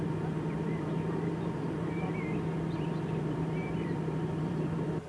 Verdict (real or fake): fake